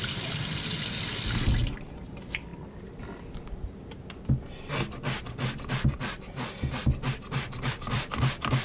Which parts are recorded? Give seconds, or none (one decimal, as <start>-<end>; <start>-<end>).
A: 2.5-7.7